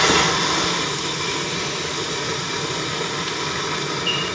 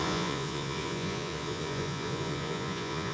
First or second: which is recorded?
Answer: first